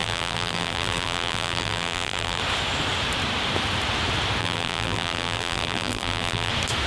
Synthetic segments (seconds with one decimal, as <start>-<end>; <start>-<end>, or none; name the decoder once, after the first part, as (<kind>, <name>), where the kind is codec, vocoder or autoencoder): 0.0-2.4 (vocoder, BigVGAN v2); 4.4-6.5